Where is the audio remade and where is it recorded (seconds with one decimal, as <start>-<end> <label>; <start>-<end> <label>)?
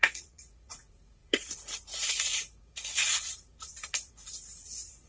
0.0-5.1 remade